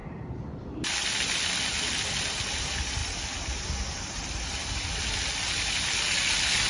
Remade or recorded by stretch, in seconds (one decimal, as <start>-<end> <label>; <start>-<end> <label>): 0.0-6.7 recorded